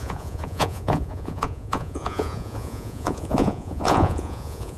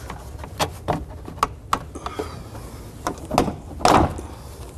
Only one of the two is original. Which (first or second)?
second